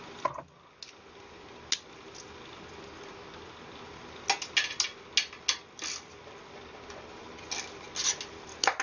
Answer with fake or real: real